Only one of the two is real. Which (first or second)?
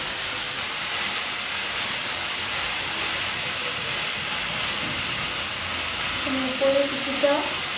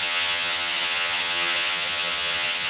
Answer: first